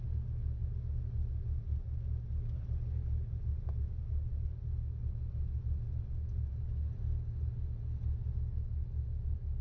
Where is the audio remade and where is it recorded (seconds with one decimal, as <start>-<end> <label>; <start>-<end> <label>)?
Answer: 0.0-9.6 recorded